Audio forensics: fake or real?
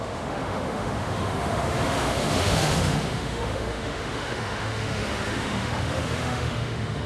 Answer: fake